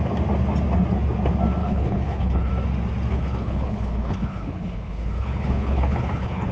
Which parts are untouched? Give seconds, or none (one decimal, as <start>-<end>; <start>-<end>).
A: 0.0-1.6; 2.5-3.1